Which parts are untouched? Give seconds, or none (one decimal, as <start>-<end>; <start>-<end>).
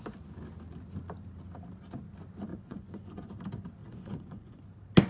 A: 0.0-2.5; 3.3-3.8; 4.6-5.1